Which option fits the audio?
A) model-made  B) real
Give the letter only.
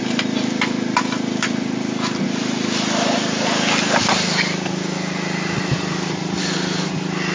B